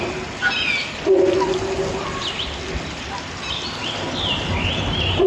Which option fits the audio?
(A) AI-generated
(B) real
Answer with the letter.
B